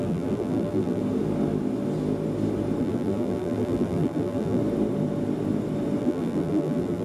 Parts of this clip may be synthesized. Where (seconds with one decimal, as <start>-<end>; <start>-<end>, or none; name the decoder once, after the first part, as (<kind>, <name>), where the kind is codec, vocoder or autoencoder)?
0.0-1.0 (vocoder, BigVGAN v2); 2.8-4.6; 6.0-7.0